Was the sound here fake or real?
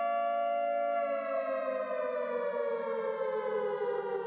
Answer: real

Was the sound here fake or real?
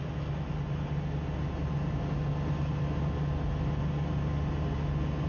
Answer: real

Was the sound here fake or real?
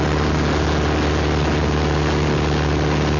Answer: real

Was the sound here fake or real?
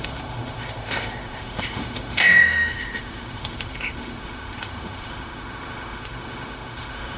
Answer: fake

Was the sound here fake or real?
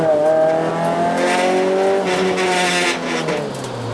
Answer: real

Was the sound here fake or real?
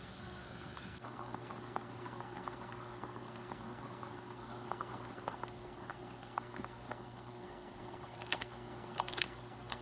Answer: fake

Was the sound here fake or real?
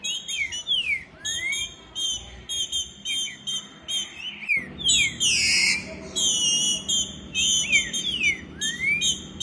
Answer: real